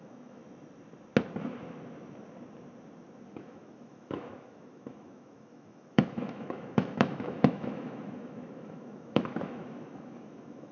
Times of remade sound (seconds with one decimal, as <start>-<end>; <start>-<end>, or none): 0.0-0.4; 3.3-10.7